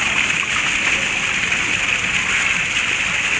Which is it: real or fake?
real